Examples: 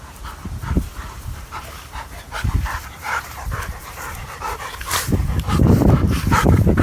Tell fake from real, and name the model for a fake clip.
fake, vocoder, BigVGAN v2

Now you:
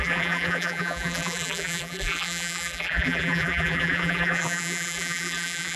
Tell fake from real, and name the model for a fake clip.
fake, vocoder, BigVGAN v2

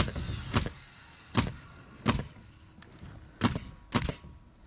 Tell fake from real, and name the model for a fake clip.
real